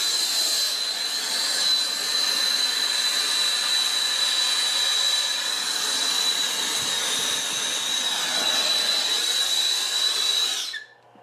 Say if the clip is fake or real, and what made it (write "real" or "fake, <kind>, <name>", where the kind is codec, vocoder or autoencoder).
real